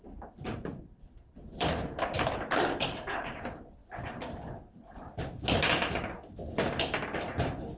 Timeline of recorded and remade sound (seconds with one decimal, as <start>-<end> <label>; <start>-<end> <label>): 0.0-7.8 remade